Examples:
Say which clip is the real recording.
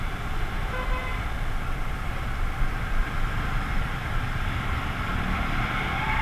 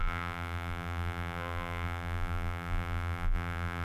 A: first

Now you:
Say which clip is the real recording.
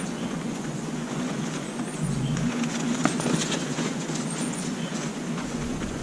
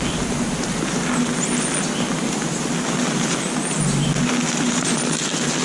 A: second